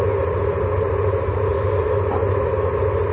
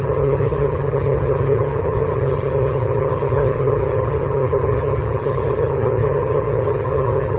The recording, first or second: first